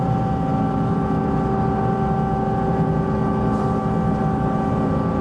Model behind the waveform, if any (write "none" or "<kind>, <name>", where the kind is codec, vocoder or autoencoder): none